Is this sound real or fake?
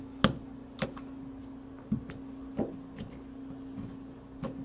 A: real